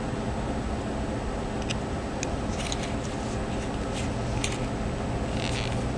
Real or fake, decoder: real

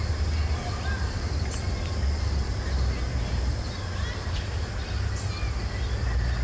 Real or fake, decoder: real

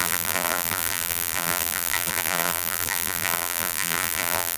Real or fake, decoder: fake, vocoder, BigVGAN v2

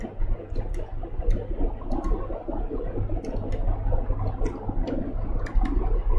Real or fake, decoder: real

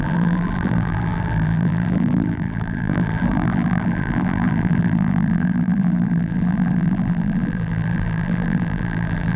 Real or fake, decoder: fake, vocoder, BigVGAN v2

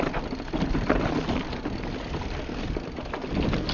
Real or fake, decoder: real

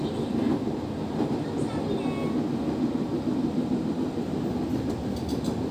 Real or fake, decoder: real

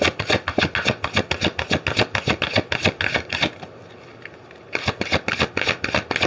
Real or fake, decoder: real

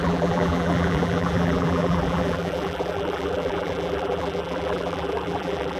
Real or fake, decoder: fake, vocoder, BigVGAN v2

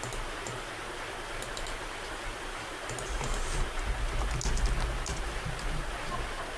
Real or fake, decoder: real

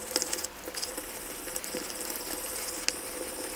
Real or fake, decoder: real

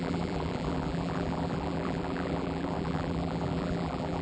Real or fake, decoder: fake, vocoder, BigVGAN v2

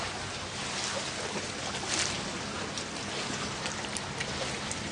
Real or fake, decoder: real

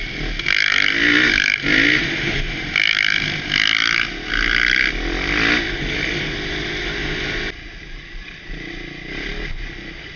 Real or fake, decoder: real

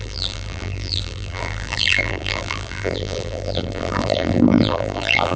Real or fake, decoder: fake, vocoder, BigVGAN v2